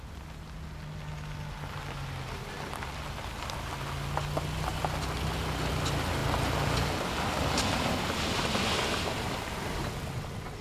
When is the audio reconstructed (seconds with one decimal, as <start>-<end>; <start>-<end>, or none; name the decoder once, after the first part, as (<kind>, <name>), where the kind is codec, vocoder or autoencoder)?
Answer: none